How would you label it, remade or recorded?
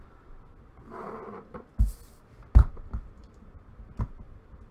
recorded